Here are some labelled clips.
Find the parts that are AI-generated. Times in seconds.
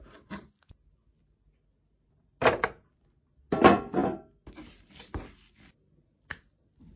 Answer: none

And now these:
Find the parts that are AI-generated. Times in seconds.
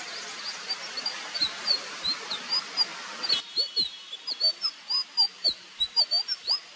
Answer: none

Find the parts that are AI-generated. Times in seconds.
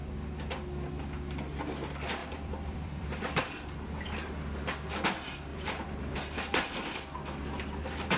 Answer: 2.2-3.4 (vocoder, BigVGAN v2); 5.5-6.1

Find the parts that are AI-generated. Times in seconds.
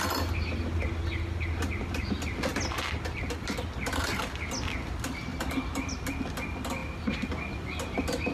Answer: 5.3-5.9 (vocoder, BigVGAN v2)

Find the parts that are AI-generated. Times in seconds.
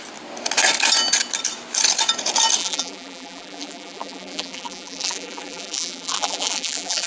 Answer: 2.6-7.1 (vocoder, BigVGAN v2)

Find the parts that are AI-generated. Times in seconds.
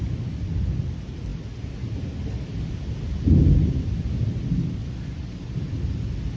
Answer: none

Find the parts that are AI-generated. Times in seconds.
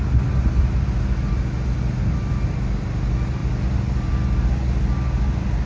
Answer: none